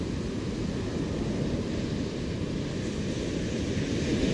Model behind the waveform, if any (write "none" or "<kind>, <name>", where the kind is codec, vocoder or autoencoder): none